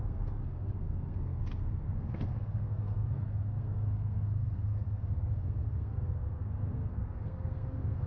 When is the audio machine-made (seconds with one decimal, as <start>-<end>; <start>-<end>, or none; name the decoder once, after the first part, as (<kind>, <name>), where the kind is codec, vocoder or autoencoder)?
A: 0.0-8.1 (codec, SNAC)